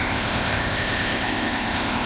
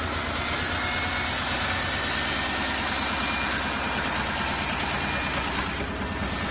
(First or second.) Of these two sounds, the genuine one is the second